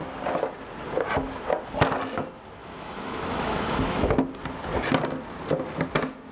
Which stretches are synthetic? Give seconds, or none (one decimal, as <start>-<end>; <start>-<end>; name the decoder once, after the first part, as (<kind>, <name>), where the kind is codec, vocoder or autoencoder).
2.6-4.1 (autoencoder, DAC-VAE)